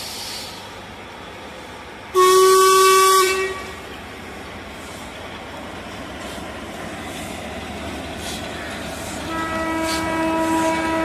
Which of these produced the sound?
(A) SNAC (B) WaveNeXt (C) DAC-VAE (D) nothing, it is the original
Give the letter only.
D